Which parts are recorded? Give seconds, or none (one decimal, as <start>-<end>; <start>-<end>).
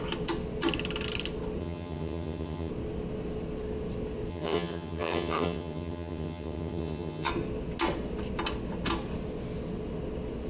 0.0-1.6; 2.7-4.3; 7.3-10.5